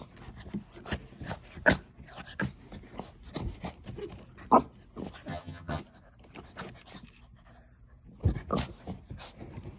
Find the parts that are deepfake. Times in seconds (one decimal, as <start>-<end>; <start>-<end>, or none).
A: 5.3-5.8